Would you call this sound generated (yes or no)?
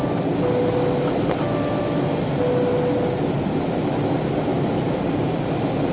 no